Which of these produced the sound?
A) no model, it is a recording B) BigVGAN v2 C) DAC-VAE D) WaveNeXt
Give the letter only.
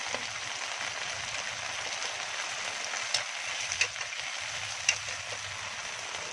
A